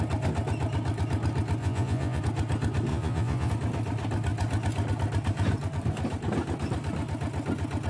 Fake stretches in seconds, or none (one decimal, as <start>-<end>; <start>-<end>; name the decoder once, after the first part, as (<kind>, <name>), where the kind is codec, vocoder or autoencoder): 1.6-2.2 (vocoder, Vocos); 2.9-3.5